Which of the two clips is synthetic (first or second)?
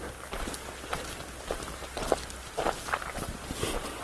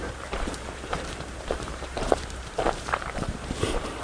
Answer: second